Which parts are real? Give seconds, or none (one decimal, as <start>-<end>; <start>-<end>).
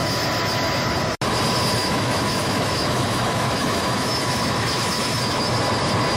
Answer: 0.0-1.8; 5.5-6.2